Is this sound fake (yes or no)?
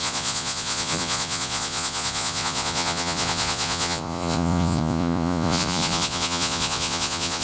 yes